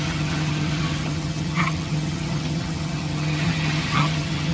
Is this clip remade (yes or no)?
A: yes